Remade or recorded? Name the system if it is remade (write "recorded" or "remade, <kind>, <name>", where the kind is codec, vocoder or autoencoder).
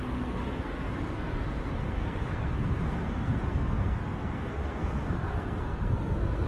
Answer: remade, codec, SNAC